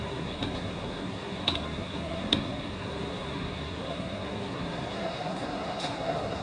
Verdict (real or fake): fake